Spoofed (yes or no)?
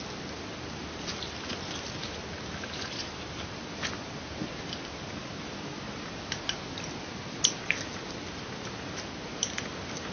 no